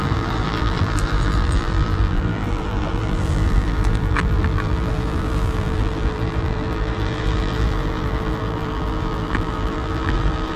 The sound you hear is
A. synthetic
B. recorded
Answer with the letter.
A